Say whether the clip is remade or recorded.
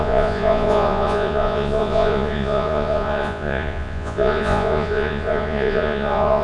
remade